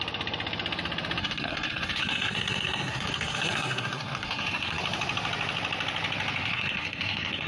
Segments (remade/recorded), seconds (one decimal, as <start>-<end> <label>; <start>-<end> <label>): 0.0-1.2 recorded; 1.2-4.8 remade; 4.8-6.4 recorded; 6.4-7.5 remade